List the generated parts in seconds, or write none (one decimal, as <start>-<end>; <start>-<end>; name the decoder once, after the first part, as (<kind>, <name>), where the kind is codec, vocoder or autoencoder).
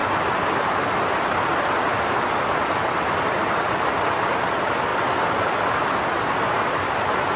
none